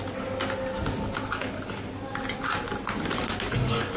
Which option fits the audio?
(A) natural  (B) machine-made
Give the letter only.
A